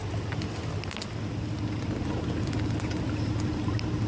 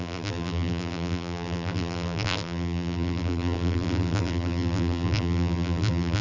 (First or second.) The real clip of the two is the first